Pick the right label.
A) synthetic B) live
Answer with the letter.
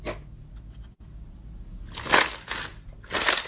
B